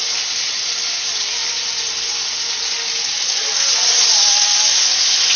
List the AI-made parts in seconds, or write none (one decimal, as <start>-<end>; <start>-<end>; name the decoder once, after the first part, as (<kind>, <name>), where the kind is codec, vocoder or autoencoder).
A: none